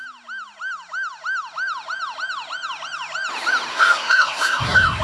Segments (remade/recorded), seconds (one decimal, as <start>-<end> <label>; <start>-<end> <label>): 0.0-3.7 recorded; 3.7-5.0 remade